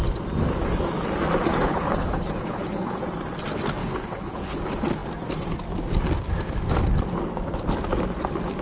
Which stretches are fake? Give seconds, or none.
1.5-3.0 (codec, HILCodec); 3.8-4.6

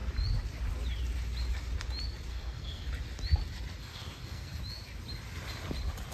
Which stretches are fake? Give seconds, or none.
2.3-2.9 (codec, SNAC); 3.8-4.6

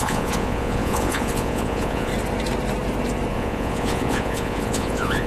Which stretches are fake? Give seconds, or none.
0.0-2.1 (vocoder, Vocos); 3.3-5.3

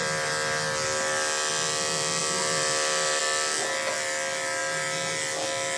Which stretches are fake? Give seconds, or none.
2.2-3.2 (vocoder, BigVGAN v2)

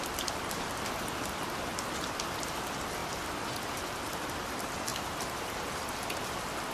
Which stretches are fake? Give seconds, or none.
4.9-5.6 (vocoder, BigVGAN v2)

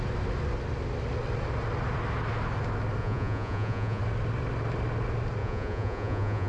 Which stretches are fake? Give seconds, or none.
3.0-4.0 (vocoder, Vocos); 5.4-6.5

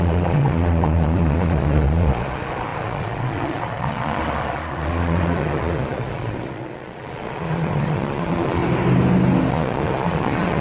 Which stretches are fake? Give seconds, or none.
0.0-8.6 (vocoder, Vocos); 9.5-10.6

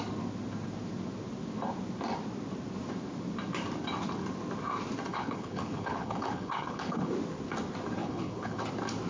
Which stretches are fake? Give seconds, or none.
5.1-7.1 (codec, HILCodec); 8.0-8.6